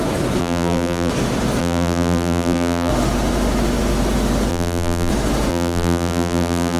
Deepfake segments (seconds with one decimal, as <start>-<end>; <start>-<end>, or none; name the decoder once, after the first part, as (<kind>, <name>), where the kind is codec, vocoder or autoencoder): 0.4-1.1 (vocoder, BigVGAN v2); 1.6-2.9; 4.5-5.1; 5.5-6.8